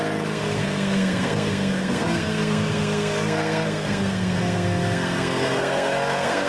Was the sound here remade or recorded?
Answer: remade